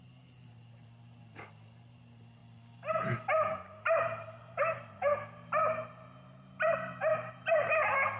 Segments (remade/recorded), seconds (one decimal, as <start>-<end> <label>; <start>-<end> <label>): 0.0-8.2 remade